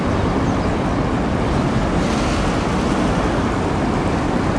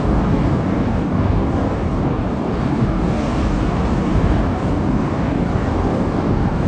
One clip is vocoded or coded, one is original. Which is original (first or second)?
first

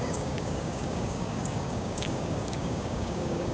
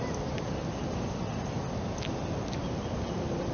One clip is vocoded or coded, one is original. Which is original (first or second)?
second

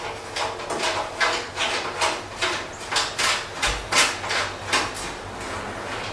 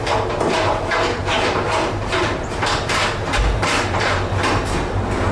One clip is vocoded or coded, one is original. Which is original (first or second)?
first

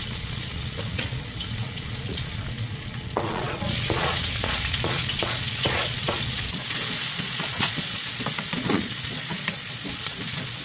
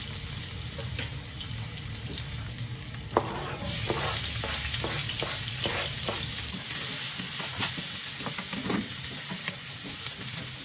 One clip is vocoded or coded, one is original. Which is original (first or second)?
second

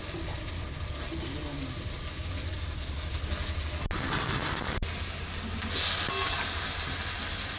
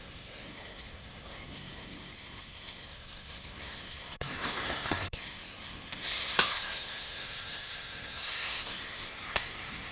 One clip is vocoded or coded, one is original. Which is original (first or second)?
first